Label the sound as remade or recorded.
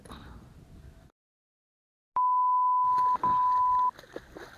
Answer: recorded